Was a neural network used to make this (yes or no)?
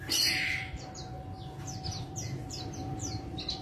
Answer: yes